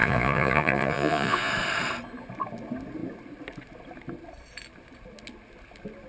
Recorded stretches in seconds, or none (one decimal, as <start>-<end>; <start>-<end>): 1.5-6.1